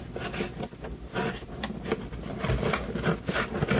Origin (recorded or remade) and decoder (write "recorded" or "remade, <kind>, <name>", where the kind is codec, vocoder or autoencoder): recorded